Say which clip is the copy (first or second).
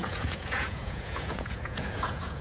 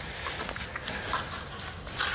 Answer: first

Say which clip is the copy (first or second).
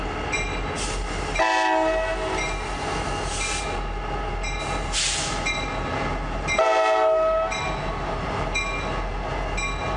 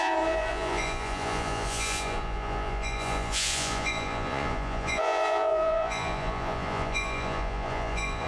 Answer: second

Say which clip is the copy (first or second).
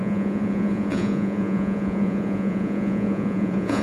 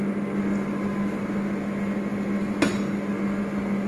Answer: first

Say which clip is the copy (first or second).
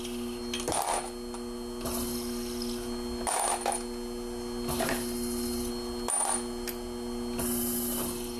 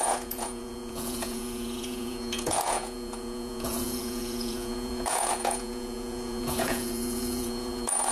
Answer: second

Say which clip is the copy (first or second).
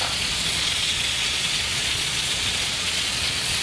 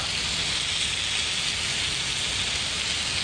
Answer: first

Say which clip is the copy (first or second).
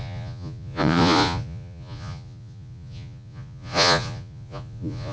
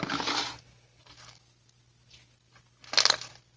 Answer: first